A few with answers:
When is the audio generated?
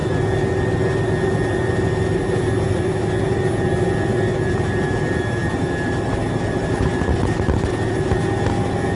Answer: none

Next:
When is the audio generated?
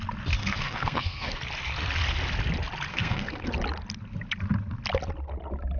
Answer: 0.4-1.4 (codec, SNAC); 2.9-3.5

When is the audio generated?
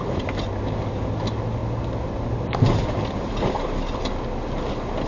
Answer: none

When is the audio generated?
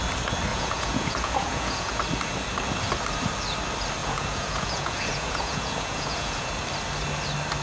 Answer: 0.5-2.0 (vocoder, Vocos); 4.0-6.5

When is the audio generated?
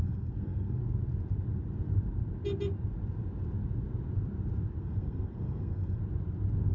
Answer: 0.0-0.8 (codec, SNAC); 4.8-6.0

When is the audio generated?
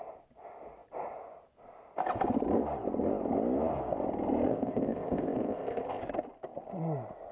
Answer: 4.5-6.0 (codec, ZipCodec)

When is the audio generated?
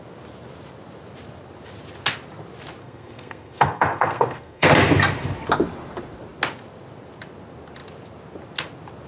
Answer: 2.8-4.7 (codec, SNAC)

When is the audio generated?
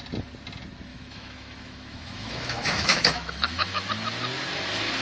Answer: 0.9-3.9 (autoencoder, DAC-VAE)